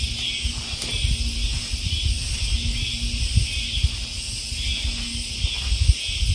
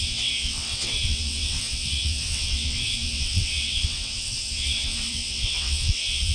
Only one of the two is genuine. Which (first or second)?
first